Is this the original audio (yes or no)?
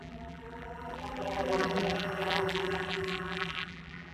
no